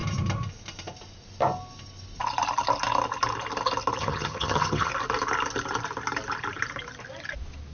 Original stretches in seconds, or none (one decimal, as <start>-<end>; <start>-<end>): 0.0-4.0; 4.9-7.7